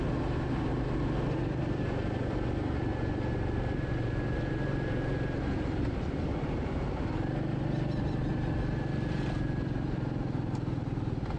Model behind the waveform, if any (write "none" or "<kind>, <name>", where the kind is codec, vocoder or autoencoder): none